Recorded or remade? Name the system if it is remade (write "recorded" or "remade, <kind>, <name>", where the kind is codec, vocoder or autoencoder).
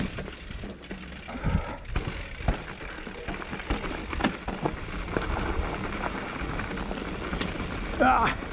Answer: recorded